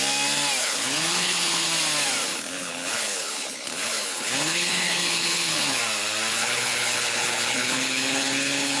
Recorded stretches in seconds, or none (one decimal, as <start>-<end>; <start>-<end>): 0.0-0.6; 1.7-2.3; 5.8-6.3